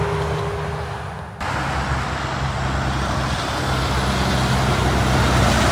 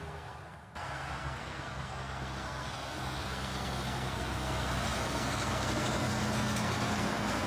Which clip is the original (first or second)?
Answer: first